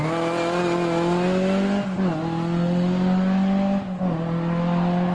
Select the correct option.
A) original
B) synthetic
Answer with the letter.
A